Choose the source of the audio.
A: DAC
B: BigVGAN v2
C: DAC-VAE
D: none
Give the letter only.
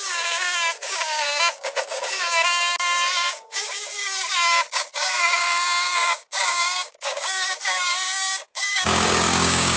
A